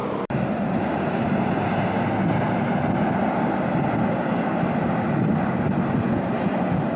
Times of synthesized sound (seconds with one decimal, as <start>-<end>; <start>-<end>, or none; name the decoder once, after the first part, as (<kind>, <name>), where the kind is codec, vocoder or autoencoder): 0.0-0.7 (vocoder, BigVGAN v2)